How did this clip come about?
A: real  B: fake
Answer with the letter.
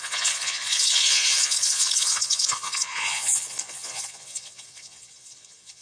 B